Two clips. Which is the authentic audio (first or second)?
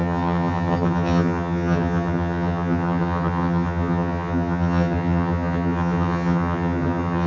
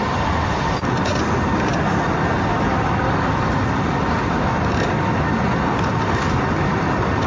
second